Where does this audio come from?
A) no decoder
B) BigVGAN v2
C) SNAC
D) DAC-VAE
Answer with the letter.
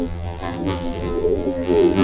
B